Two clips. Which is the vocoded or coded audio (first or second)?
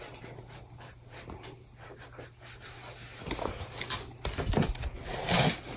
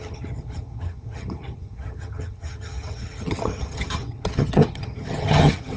second